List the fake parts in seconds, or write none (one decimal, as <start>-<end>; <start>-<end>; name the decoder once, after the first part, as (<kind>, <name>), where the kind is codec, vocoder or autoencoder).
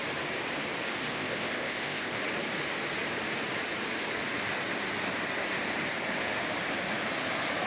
1.1-2.2 (codec, ZipCodec)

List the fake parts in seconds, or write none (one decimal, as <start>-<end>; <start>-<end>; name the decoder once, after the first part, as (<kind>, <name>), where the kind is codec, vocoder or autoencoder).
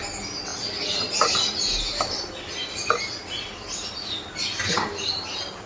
none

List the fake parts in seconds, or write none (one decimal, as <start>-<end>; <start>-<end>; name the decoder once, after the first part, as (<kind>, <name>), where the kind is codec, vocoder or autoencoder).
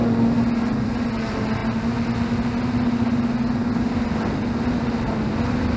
none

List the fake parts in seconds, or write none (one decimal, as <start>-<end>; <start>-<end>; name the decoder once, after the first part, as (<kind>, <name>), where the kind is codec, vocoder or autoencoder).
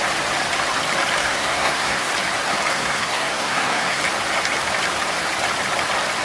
1.2-2.1 (codec, SNAC); 2.7-4.0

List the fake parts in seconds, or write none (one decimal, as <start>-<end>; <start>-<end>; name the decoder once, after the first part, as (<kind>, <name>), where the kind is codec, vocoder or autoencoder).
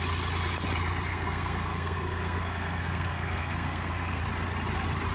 1.1-4.2 (codec, SNAC)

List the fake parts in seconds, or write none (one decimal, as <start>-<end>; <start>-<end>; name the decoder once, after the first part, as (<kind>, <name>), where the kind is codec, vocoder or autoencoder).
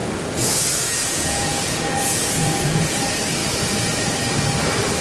0.0-3.0 (vocoder, Vocos)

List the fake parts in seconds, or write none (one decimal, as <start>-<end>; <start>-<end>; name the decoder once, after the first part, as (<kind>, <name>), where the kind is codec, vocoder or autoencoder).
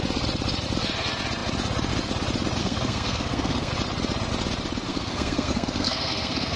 2.6-3.7 (codec, SNAC); 4.9-6.6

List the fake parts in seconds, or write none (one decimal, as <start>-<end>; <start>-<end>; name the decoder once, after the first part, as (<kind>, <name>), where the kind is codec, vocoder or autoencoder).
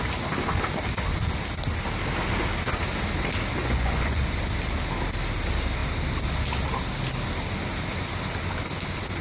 3.6-4.2 (vocoder, Vocos)